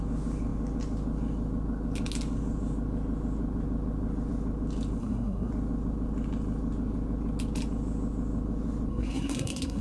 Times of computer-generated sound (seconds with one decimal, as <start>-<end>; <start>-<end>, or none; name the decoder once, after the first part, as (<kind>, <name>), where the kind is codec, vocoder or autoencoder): 5.0-5.5 (codec, SNAC); 8.9-9.8